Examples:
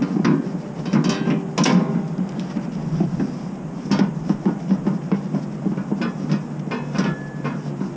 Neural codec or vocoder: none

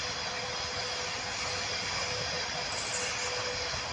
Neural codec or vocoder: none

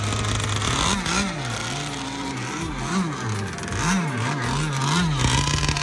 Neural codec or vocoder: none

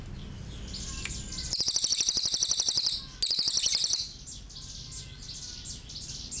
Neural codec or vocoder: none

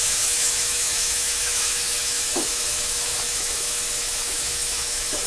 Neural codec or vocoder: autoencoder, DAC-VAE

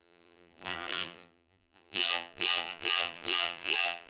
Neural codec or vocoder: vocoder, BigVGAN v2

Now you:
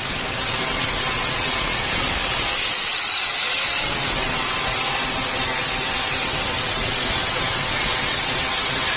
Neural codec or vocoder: vocoder, WaveNeXt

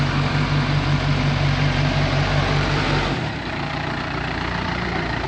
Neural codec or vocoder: vocoder, BigVGAN v2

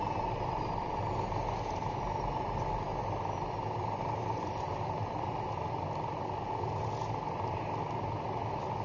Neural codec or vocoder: none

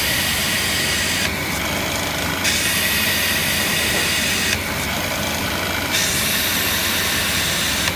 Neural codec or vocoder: none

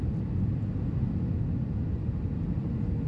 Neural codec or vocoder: none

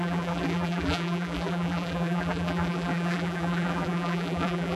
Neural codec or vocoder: vocoder, BigVGAN v2